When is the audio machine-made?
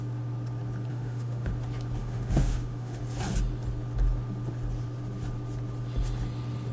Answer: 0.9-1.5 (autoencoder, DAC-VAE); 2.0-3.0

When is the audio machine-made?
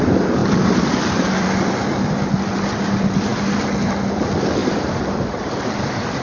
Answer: 4.6-6.2 (vocoder, BigVGAN v2)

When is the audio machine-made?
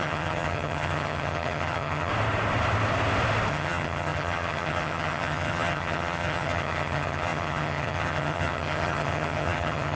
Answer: 0.0-2.1 (vocoder, HiFi-GAN); 3.5-9.9